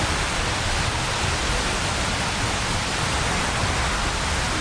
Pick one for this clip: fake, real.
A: fake